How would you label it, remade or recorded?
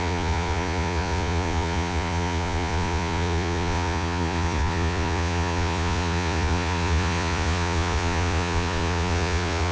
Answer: remade